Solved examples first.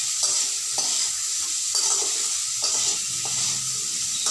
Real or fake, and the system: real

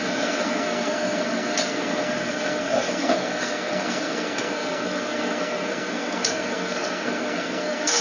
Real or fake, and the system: fake, codec, SNAC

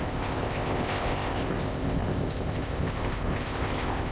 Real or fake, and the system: fake, codec, ZipCodec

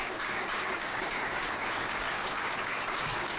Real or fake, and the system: fake, codec, DAC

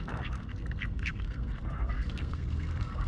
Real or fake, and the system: fake, codec, SNAC